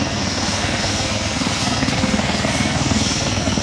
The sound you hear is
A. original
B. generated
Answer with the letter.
B